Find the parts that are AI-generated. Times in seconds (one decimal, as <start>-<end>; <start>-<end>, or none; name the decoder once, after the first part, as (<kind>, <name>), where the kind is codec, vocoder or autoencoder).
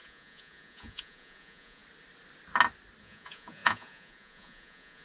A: 0.0-1.8 (vocoder, Vocos); 3.0-5.0